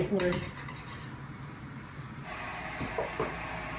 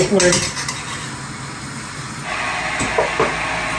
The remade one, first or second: first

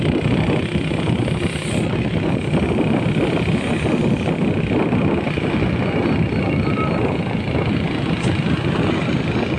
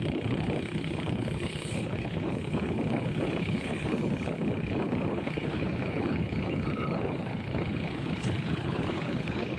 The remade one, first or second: second